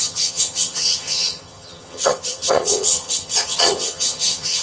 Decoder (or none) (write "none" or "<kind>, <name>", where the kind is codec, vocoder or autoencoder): vocoder, HiFi-GAN